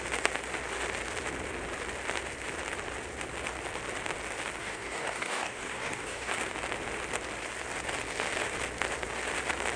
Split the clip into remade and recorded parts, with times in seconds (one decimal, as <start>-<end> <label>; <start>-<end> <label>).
0.0-4.6 recorded; 4.6-6.3 remade; 6.3-9.8 recorded